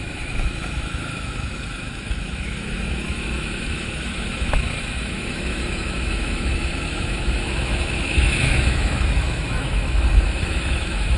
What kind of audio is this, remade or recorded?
remade